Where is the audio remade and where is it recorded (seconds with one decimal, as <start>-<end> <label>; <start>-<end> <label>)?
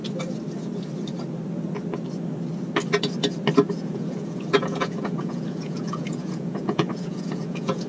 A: 0.0-3.7 recorded; 3.7-7.9 remade